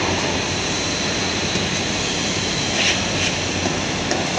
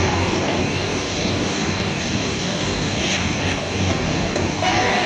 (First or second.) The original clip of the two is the first